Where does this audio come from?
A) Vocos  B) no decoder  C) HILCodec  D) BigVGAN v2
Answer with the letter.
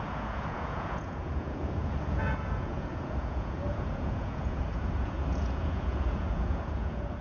A